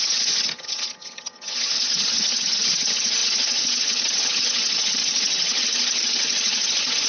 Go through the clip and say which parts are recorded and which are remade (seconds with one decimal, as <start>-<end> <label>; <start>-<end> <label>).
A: 0.0-7.1 remade

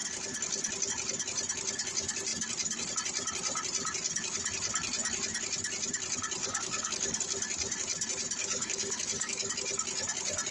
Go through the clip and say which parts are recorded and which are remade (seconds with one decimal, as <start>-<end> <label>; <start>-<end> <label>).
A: 0.0-6.4 recorded; 6.4-7.2 remade; 7.2-8.4 recorded; 8.4-9.5 remade; 9.5-10.5 recorded